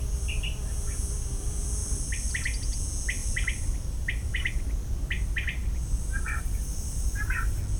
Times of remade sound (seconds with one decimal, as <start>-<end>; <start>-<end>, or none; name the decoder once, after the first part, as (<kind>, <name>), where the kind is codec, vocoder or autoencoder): 1.8-2.3 (vocoder, BigVGAN v2); 3.2-4.5; 5.6-7.2